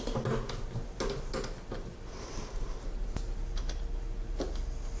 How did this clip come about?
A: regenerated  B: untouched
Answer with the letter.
B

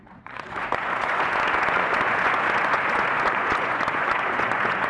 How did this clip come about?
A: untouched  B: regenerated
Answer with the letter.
B